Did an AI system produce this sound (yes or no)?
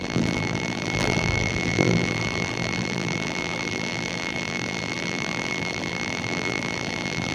yes